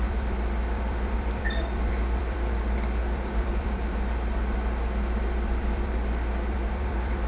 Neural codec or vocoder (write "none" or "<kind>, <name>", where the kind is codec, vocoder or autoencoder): vocoder, BigVGAN v2